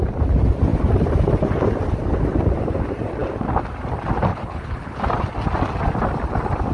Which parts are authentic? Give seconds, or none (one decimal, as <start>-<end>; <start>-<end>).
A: 0.0-4.3; 5.0-6.7